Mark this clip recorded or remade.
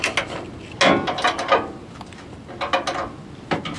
recorded